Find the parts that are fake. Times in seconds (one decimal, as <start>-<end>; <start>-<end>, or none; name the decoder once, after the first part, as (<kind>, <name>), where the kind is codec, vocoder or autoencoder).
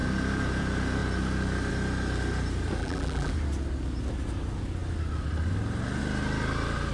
2.8-3.3 (vocoder, BigVGAN v2)